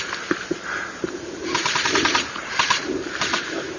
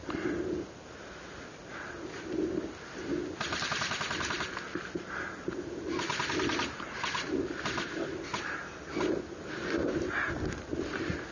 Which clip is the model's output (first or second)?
first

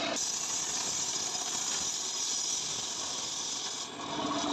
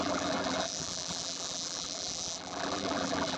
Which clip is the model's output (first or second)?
second